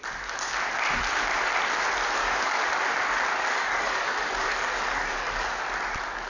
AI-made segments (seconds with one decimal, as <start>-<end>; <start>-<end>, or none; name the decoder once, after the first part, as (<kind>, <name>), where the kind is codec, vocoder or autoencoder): 2.2-2.7 (codec, DAC); 3.3-5.6